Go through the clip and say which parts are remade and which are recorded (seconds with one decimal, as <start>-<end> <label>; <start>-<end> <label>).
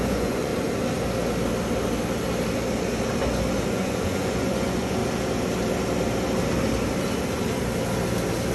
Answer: 0.0-0.5 remade; 0.5-3.7 recorded; 3.7-5.0 remade; 5.0-8.5 recorded